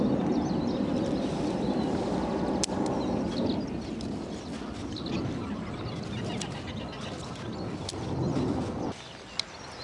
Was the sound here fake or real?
real